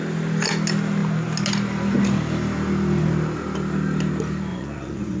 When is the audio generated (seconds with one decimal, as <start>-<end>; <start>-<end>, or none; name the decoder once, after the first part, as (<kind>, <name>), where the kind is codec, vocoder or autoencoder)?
4.5-5.2 (vocoder, Vocos)